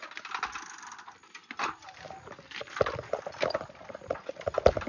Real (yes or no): yes